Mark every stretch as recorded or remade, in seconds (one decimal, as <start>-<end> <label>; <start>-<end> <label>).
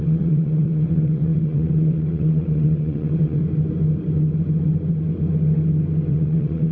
0.0-3.4 remade; 3.4-6.1 recorded; 6.1-6.7 remade